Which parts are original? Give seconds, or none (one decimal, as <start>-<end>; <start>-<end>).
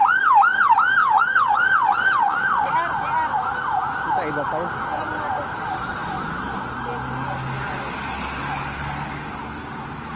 0.0-1.0; 2.7-10.2